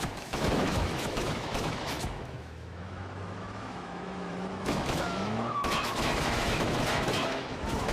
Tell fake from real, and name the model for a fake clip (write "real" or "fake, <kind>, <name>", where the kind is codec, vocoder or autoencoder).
fake, autoencoder, DAC-VAE